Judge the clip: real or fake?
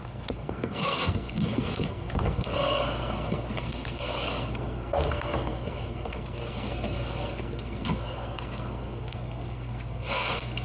fake